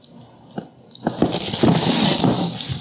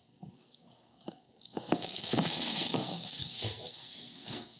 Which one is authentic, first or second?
first